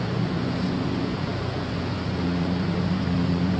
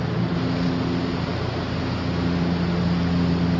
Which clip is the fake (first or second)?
first